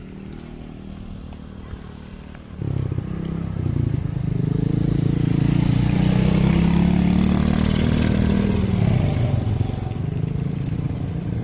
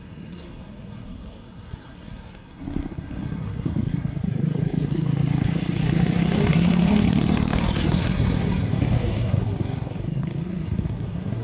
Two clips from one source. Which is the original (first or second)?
first